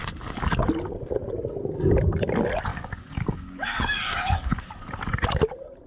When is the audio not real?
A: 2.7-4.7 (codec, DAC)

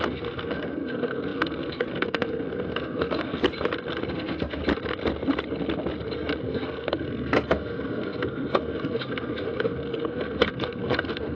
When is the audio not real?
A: 0.0-3.4 (codec, SNAC); 4.1-4.6; 6.4-11.3